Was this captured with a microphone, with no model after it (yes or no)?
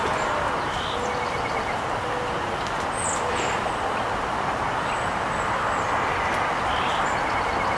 yes